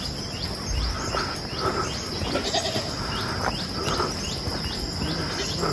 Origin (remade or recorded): recorded